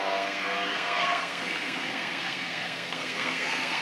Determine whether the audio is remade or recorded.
remade